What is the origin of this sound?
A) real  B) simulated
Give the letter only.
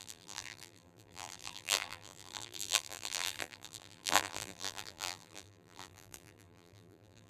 B